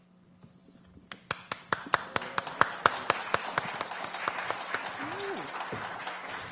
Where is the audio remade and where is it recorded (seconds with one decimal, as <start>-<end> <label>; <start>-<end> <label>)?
0.0-6.5 recorded